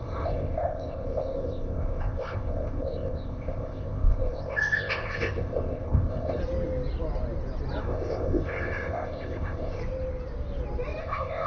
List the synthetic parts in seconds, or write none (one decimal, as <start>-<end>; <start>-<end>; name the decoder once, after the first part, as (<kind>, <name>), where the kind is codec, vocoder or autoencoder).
0.0-6.4 (codec, ZipCodec); 7.8-9.8; 11.0-11.5